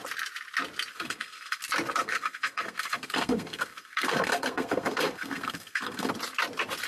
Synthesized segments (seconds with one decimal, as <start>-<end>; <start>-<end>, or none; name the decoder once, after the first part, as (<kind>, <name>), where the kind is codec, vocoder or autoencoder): 0.9-1.6 (codec, SNAC); 2.0-6.1